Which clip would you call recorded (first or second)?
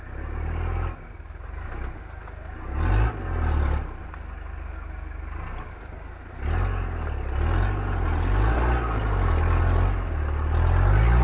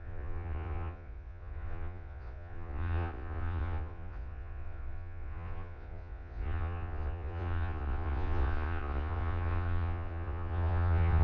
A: first